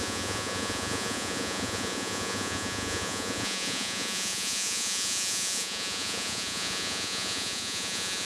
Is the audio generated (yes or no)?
yes